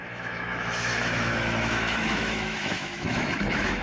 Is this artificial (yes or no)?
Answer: yes